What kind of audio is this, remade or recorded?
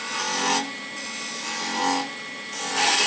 recorded